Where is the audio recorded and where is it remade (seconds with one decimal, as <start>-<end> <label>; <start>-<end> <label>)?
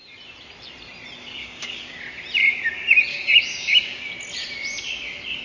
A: 0.0-1.4 recorded; 1.4-2.0 remade; 2.0-3.1 recorded; 3.1-4.1 remade; 4.1-5.4 recorded